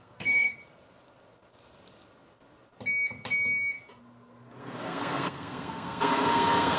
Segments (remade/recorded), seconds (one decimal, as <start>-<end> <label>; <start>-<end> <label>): 0.0-0.5 remade; 0.5-4.6 recorded; 4.6-6.8 remade